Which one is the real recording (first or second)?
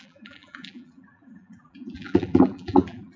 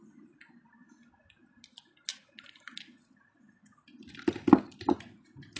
second